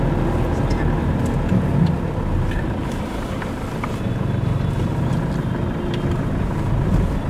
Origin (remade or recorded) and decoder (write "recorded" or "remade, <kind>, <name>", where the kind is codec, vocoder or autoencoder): recorded